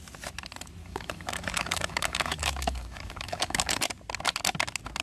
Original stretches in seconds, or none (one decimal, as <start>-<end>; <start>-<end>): 0.0-0.8; 3.8-5.0